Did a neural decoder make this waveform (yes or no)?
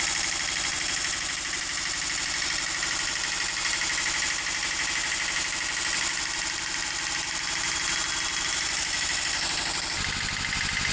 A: no